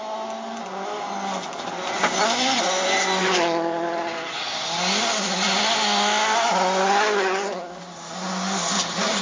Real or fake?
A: real